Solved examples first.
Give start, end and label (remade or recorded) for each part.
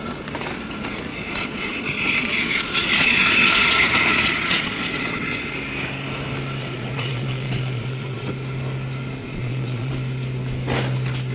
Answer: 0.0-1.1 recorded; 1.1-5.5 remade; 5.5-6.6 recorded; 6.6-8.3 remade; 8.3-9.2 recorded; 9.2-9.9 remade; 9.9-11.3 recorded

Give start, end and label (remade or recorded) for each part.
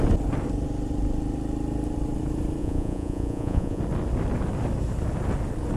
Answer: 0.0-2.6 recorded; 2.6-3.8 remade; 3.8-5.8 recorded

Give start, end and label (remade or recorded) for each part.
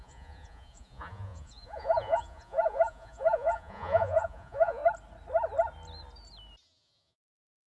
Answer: 0.0-4.8 remade; 4.8-6.6 recorded; 6.6-7.7 remade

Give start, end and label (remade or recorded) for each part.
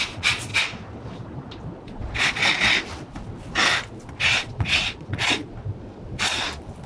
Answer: 0.0-0.5 remade; 0.5-1.8 recorded; 1.8-2.4 remade; 2.4-4.1 recorded; 4.1-5.5 remade; 5.5-6.9 recorded